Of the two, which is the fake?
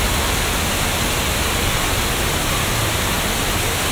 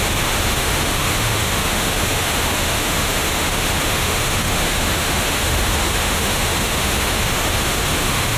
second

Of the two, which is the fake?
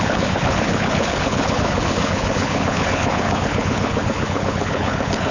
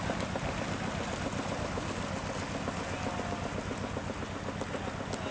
first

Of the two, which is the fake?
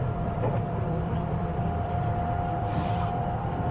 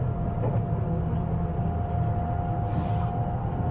first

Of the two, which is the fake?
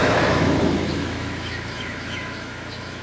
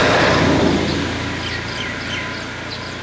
first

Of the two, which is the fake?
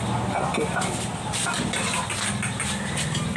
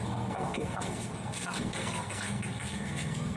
second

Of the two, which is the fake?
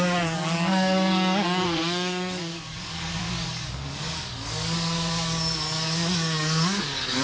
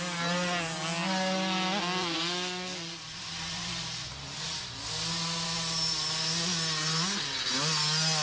first